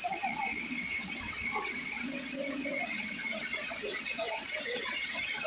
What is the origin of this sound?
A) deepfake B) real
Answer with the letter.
A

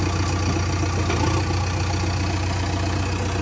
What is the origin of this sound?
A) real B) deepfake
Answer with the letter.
A